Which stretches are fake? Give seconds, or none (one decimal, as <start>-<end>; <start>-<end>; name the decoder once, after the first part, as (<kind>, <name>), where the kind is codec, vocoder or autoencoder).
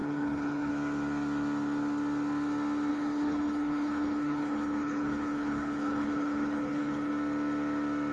0.0-0.7 (codec, HILCodec); 2.9-7.1